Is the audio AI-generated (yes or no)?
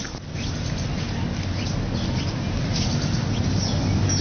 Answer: no